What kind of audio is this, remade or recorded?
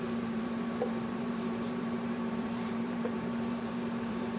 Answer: remade